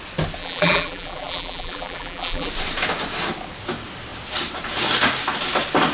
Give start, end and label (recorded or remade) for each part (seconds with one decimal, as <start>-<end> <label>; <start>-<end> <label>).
0.0-0.4 recorded; 0.4-2.5 remade; 2.5-5.9 recorded